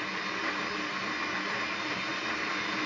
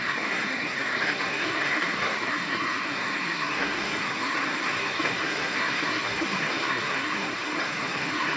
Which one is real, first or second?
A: first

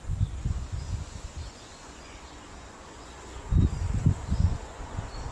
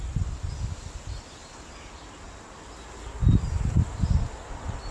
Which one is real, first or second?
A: second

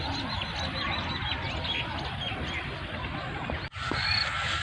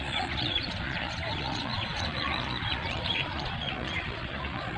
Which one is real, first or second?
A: first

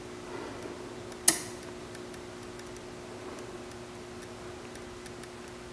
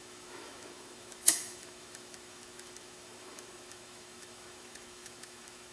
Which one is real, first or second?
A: first